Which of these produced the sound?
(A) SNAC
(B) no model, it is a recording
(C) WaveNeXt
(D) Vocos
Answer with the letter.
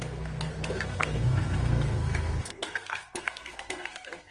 A